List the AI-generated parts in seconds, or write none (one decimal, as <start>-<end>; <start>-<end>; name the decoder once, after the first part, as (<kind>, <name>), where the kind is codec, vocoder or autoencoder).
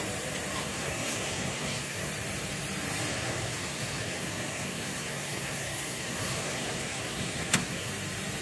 0.6-2.1 (codec, SNAC); 3.1-7.9